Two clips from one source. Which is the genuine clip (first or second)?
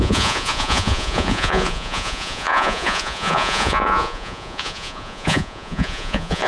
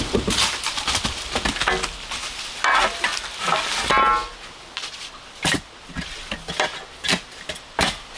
second